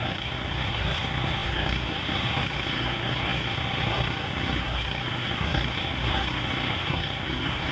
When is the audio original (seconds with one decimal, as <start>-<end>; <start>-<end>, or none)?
none